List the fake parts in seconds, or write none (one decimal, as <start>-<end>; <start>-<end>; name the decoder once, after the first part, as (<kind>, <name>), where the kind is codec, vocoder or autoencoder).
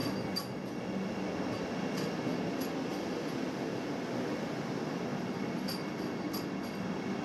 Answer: none